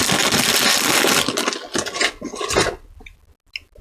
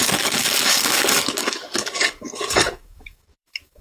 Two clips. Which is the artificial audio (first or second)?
second